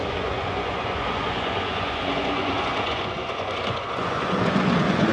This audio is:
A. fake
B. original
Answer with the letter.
A